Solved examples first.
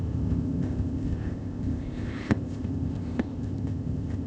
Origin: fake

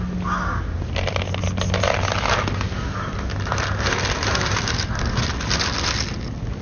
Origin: real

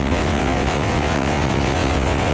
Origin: fake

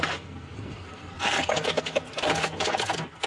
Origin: fake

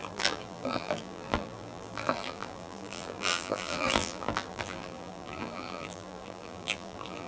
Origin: fake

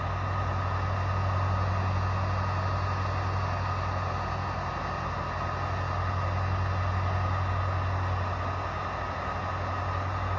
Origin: real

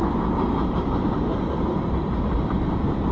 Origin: fake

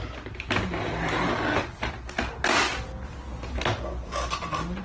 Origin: real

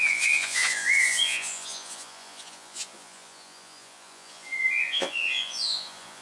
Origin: fake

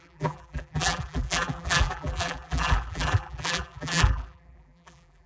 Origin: fake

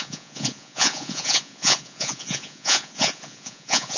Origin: fake